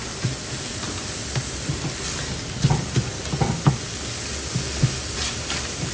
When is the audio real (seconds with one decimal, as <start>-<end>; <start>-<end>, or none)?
0.0-5.0